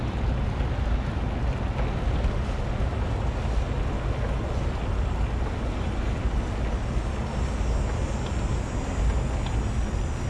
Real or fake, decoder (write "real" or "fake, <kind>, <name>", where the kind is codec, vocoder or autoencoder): real